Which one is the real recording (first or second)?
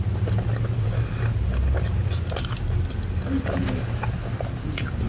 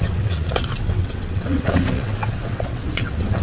first